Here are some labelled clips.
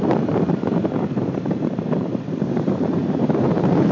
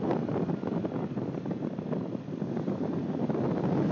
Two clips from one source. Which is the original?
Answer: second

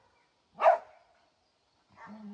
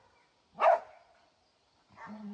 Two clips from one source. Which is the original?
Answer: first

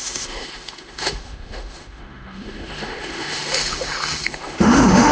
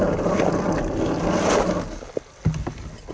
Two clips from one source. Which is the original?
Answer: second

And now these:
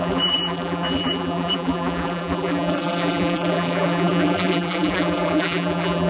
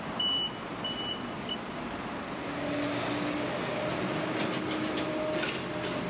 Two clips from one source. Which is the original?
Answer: second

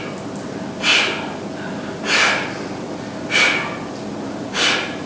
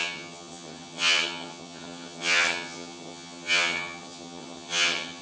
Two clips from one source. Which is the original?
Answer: first